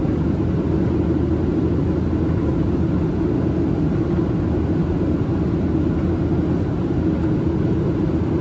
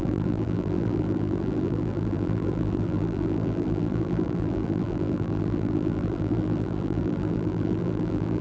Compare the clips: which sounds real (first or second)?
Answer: first